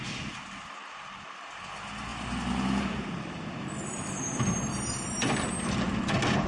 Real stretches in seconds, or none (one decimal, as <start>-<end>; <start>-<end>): 0.0-2.1; 3.4-6.5